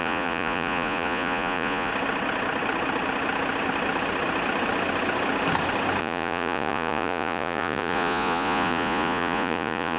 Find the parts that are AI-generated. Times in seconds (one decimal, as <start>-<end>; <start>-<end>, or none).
0.0-1.9; 6.0-10.0